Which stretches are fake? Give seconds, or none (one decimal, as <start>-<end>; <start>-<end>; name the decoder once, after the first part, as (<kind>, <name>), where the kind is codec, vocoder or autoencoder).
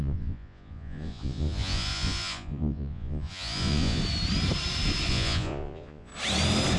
0.0-4.0 (vocoder, Vocos); 5.1-6.1